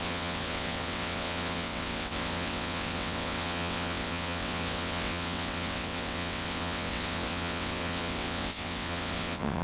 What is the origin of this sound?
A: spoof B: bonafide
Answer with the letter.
A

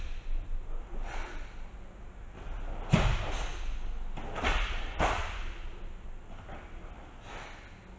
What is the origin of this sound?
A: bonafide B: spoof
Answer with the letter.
A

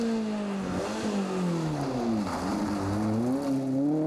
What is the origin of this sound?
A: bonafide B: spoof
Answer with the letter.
A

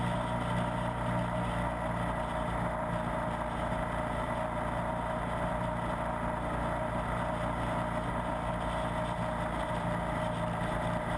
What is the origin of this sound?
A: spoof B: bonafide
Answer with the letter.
B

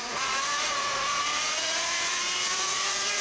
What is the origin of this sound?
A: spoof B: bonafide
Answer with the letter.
A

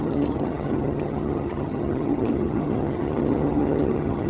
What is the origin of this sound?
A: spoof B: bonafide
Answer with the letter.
A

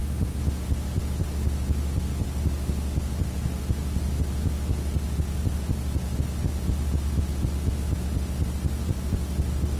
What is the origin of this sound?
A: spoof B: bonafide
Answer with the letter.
B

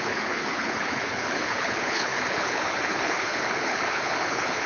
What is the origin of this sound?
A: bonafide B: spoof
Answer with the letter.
B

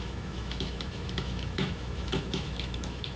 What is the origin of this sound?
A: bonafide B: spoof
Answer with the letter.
B